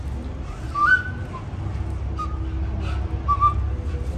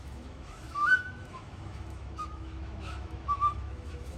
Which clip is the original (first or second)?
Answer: first